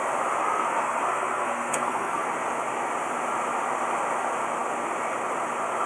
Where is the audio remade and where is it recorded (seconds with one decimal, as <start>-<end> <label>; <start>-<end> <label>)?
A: 0.0-0.4 recorded; 0.4-2.3 remade; 2.3-5.9 recorded